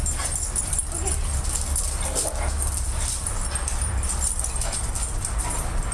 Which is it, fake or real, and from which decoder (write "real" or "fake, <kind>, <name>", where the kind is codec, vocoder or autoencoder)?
real